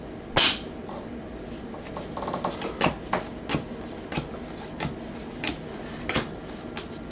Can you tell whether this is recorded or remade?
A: recorded